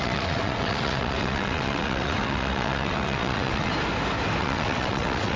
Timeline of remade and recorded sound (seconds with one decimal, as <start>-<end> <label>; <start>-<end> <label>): 0.0-3.7 remade; 3.7-4.4 recorded; 4.4-5.4 remade